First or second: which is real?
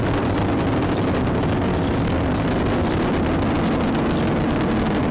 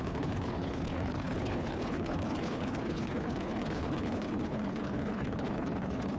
first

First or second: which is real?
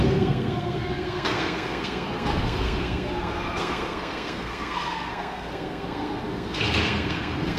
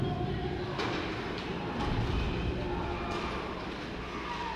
second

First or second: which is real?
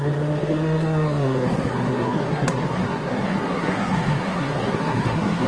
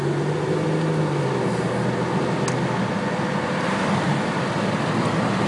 second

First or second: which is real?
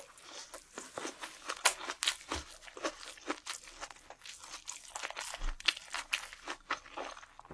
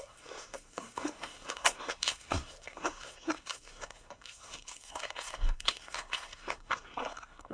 first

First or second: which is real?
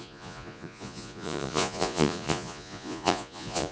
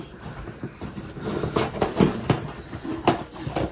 second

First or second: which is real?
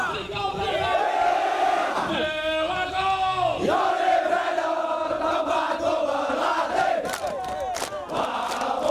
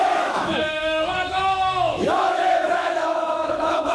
first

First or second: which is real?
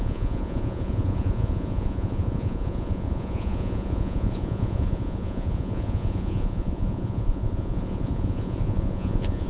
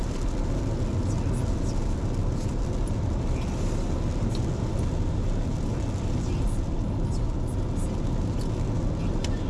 second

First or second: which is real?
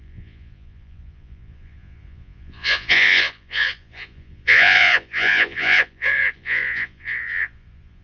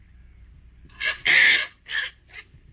second